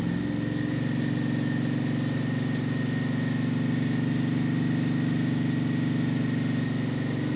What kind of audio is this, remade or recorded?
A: recorded